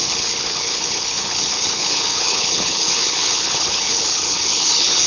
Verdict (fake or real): fake